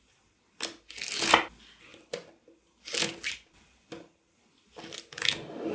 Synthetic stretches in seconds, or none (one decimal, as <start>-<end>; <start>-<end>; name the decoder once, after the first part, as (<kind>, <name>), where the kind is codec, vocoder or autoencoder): 1.9-4.2 (vocoder, BigVGAN v2)